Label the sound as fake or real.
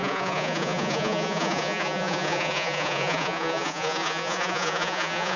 fake